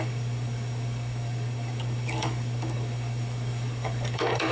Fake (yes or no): yes